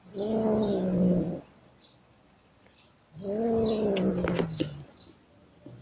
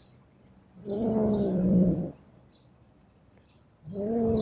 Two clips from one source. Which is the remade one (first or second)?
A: second